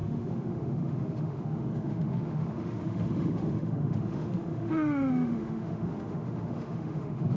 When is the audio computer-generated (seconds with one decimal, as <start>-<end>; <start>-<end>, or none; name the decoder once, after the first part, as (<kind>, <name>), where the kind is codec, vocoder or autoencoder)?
0.0-7.4 (autoencoder, DAC-VAE)